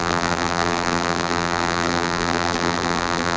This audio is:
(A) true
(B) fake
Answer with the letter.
B